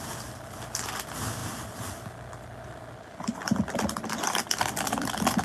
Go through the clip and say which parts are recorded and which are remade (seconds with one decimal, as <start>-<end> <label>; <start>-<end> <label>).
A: 0.0-5.4 recorded